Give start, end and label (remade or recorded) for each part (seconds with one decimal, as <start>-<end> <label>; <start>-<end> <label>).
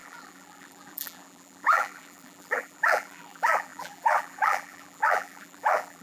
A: 0.0-6.0 remade